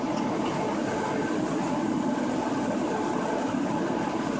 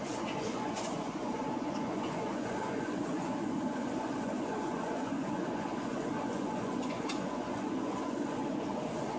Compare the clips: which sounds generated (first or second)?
second